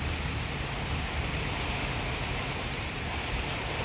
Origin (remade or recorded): recorded